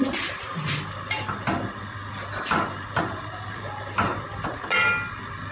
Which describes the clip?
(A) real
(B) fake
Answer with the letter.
A